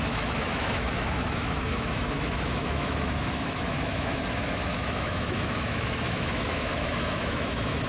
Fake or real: fake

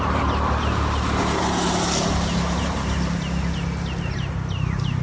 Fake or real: real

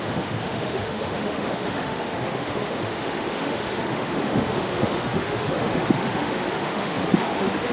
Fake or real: fake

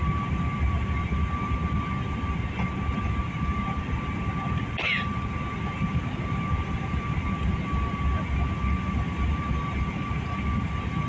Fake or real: real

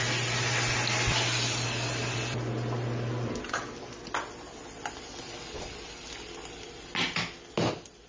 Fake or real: real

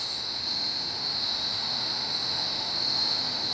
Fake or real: fake